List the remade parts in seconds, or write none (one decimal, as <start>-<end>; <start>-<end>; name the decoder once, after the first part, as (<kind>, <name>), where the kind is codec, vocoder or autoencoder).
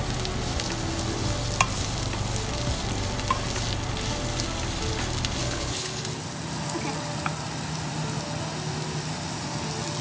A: 5.4-6.0 (codec, HILCodec)